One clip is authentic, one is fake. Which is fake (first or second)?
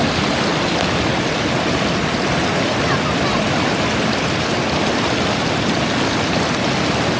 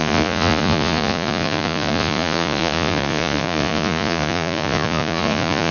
second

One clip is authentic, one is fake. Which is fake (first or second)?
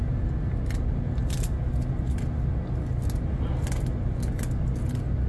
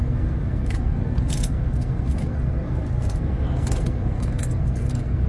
second